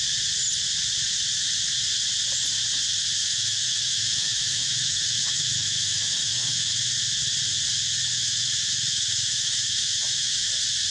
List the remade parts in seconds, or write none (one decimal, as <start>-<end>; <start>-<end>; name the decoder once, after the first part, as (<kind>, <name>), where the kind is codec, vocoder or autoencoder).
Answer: 3.2-6.9 (autoencoder, DAC-VAE); 8.1-10.5